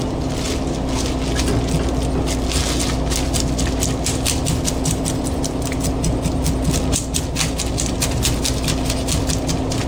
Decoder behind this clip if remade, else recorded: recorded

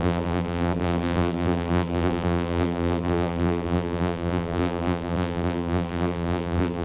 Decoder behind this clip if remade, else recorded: remade, vocoder, BigVGAN v2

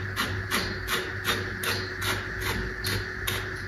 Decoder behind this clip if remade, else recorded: recorded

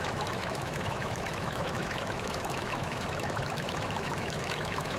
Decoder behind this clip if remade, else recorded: remade, autoencoder, DAC-VAE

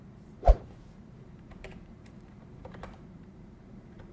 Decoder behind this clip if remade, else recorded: remade, vocoder, BigVGAN v2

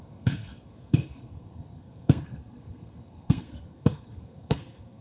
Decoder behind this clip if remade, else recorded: remade, codec, SNAC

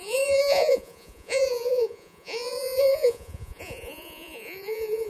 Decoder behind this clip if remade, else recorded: remade, vocoder, Vocos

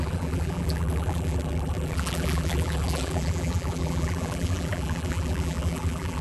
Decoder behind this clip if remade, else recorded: remade, vocoder, BigVGAN v2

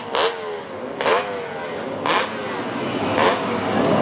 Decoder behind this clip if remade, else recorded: recorded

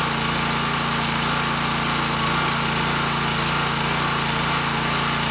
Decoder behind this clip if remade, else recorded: recorded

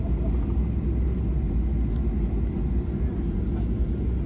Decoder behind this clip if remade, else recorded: recorded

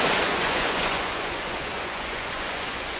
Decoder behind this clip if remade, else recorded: remade, vocoder, Vocos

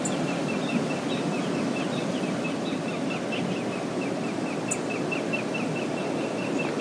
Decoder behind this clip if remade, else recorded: recorded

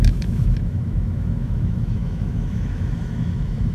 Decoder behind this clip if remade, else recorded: remade, autoencoder, DAC-VAE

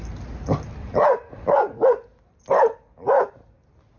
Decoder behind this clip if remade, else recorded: recorded